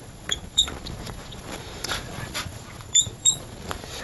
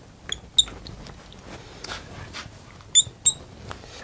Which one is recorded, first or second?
second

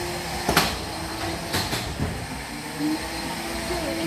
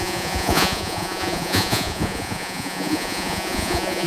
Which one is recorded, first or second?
first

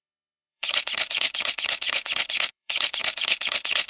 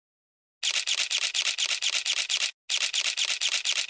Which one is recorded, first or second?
second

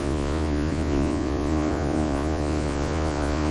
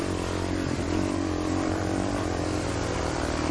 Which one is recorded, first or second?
second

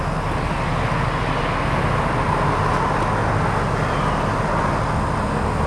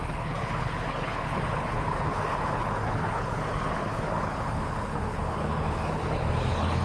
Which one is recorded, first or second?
first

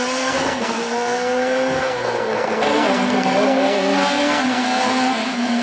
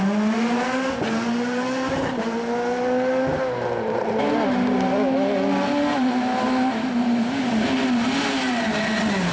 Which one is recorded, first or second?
second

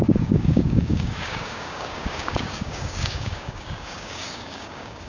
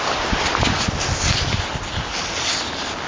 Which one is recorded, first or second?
second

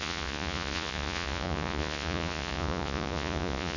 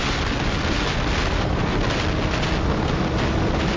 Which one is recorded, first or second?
second